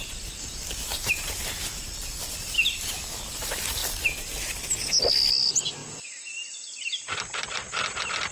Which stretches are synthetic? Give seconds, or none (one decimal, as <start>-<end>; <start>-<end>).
0.9-2.5